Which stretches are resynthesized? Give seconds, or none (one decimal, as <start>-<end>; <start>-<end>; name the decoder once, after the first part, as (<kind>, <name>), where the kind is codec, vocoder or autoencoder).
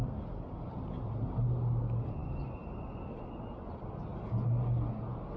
none